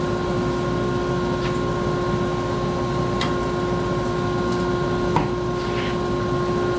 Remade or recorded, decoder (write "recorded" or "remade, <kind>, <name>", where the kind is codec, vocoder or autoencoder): recorded